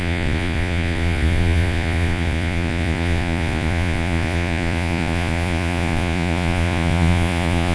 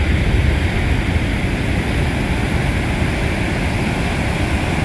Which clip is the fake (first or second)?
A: first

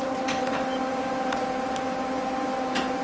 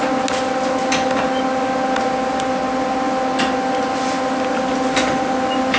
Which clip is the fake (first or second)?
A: first